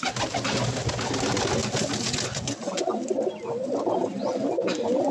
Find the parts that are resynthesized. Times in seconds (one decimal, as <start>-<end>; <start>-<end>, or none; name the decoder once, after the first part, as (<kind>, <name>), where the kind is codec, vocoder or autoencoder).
none